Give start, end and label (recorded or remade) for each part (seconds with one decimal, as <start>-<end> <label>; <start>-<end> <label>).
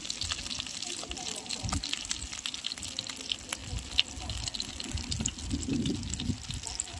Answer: 0.0-7.0 recorded